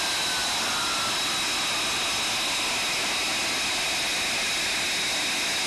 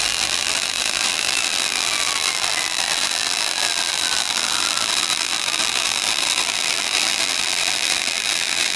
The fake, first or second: second